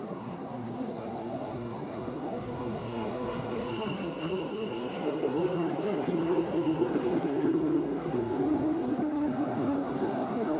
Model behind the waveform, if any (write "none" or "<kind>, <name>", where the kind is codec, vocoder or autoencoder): codec, SNAC